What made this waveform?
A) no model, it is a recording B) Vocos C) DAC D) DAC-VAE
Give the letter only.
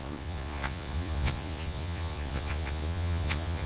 B